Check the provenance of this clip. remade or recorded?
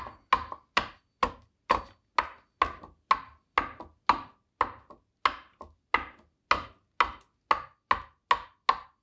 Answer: recorded